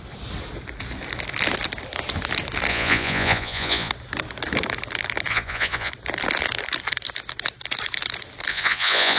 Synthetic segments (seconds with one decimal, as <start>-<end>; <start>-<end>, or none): 2.7-3.9; 5.3-5.9; 8.5-9.2